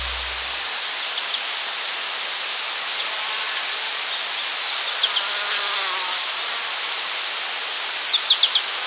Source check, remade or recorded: recorded